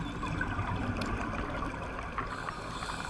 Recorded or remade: recorded